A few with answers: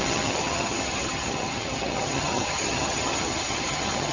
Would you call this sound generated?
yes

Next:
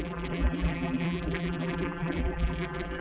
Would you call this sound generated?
yes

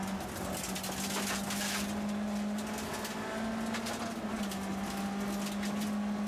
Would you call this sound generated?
no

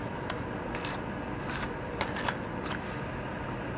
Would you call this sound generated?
no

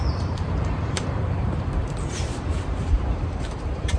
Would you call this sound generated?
yes